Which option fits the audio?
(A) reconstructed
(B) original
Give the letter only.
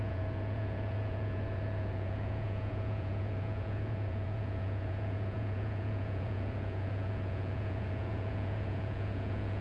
A